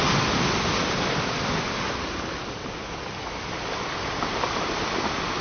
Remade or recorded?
recorded